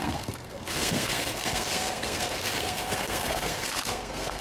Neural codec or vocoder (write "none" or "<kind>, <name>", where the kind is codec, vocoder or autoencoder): codec, SNAC